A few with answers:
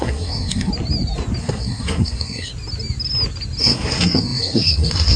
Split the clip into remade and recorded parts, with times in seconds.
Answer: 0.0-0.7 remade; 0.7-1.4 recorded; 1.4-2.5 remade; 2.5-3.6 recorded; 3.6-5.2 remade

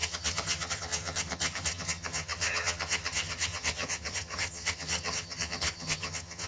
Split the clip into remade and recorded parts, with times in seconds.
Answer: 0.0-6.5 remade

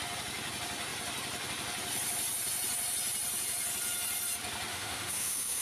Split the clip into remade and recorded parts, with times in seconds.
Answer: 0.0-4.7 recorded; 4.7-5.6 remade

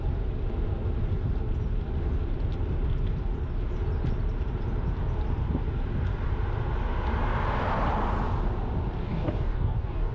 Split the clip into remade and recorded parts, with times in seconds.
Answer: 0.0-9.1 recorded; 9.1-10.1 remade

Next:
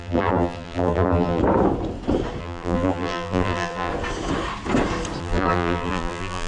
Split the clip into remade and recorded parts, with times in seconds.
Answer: 0.0-1.4 remade; 1.4-2.4 recorded; 2.4-3.9 remade; 3.9-5.2 recorded; 5.2-6.5 remade

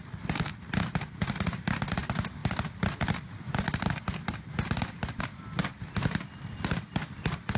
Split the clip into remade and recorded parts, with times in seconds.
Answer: 0.0-7.6 recorded

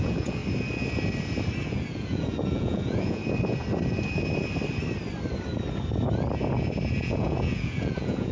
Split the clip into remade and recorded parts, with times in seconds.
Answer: 0.0-0.4 remade; 0.4-1.6 recorded; 1.6-3.2 remade; 3.2-7.0 recorded; 7.0-8.3 remade

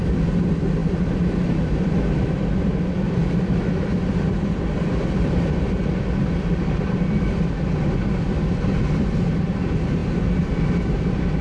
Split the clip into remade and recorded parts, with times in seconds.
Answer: 0.0-11.4 remade